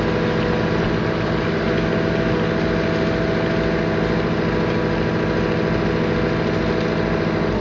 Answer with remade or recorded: recorded